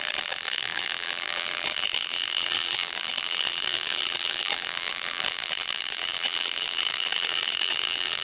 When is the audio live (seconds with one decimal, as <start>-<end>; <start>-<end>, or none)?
none